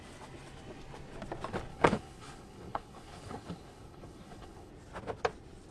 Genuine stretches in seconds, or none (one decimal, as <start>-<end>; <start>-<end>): 0.0-1.7; 4.7-5.7